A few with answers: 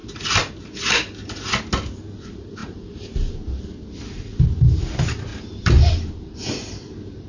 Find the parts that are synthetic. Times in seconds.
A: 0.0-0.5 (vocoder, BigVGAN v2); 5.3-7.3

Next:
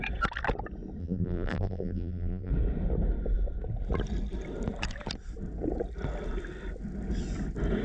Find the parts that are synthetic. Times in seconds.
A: 1.0-2.5 (vocoder, BigVGAN v2)

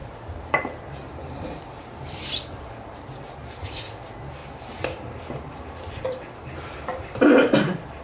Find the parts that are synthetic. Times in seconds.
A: 0.0-4.4 (vocoder, BigVGAN v2); 5.2-8.0